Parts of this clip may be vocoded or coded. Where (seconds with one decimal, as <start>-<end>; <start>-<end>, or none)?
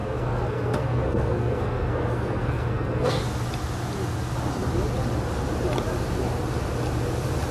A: 0.0-3.2